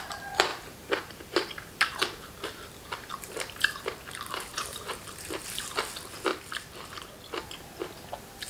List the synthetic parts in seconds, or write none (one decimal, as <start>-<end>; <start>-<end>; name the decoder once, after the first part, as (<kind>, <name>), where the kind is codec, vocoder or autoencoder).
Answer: 0.5-5.6 (vocoder, BigVGAN v2)